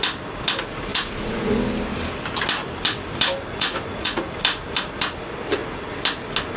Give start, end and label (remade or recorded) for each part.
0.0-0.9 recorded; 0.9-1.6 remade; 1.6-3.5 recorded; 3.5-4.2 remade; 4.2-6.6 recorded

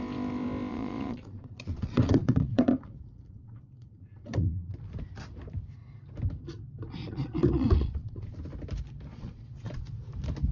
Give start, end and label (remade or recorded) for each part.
0.0-0.7 recorded; 0.7-4.7 remade; 4.7-7.0 recorded; 7.0-8.3 remade; 8.3-9.1 recorded; 9.1-9.8 remade; 9.8-10.5 recorded

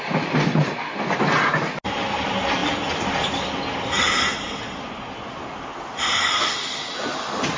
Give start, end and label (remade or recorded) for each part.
0.0-7.6 recorded